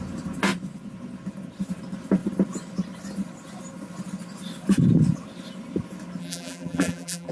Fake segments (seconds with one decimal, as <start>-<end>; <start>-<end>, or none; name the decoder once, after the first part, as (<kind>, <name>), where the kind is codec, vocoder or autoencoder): 6.2-7.3 (vocoder, BigVGAN v2)